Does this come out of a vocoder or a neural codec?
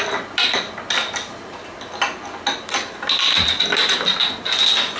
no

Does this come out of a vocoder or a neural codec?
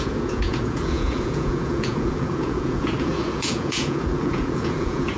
yes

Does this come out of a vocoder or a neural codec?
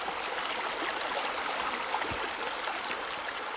no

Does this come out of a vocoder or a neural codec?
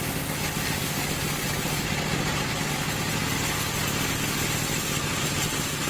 no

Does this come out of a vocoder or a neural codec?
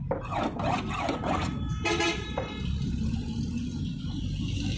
no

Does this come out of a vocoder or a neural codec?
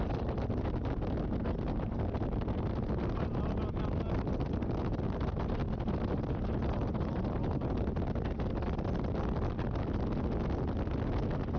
no